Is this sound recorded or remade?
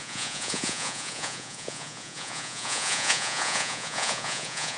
remade